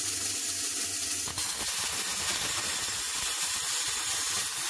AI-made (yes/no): no